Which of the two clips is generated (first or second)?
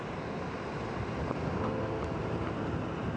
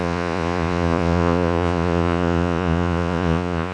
second